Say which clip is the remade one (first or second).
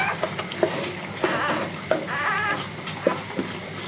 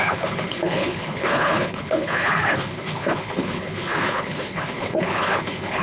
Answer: second